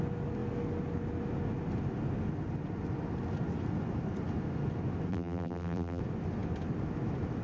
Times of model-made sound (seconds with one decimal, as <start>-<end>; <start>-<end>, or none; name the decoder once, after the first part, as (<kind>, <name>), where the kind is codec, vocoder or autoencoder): 5.1-6.0 (vocoder, BigVGAN v2)